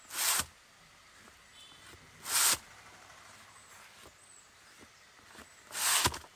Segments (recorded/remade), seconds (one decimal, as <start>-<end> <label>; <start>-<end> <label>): 0.0-6.4 recorded